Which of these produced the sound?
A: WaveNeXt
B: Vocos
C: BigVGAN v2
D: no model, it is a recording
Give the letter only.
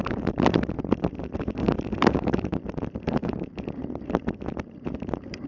C